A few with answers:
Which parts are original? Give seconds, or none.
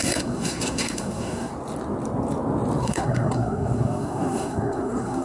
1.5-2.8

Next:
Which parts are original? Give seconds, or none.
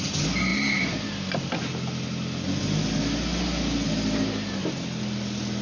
0.0-5.6